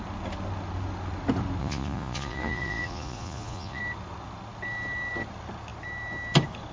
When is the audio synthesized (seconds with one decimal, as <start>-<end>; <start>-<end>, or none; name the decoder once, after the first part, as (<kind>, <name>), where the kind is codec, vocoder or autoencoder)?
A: 1.6-3.8 (vocoder, Vocos)